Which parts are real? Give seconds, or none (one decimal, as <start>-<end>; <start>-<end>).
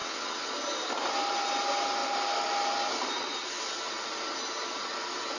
0.5-5.4